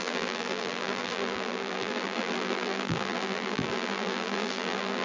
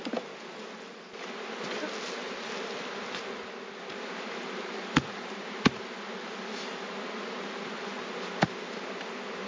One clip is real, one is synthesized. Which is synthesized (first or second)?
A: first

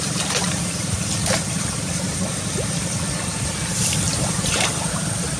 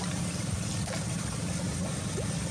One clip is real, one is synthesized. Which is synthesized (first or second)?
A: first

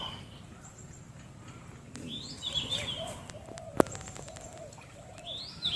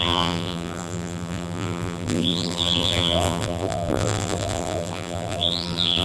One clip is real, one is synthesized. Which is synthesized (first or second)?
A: second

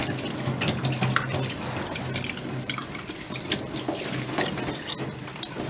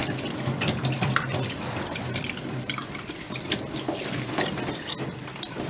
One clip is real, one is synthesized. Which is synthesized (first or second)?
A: second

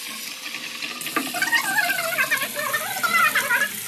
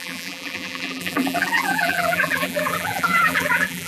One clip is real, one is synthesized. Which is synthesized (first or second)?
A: second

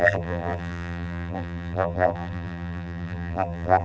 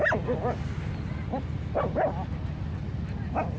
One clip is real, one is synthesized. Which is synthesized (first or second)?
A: first